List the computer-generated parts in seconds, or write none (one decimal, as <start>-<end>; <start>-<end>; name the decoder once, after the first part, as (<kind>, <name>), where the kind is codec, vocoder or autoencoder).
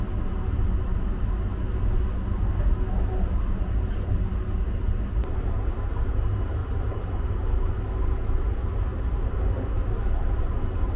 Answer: 6.6-7.8 (vocoder, BigVGAN v2)